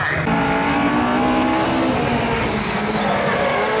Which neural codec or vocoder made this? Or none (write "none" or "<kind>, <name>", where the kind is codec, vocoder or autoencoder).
none